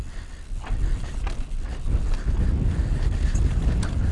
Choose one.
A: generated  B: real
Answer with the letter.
B